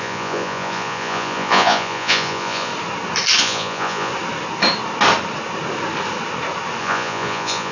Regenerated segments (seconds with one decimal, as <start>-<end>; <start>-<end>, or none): 0.0-2.7; 3.4-4.1; 6.8-7.7